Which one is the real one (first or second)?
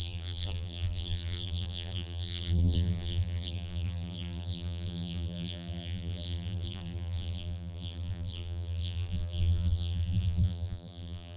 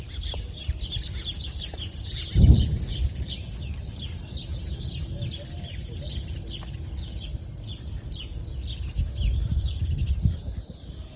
second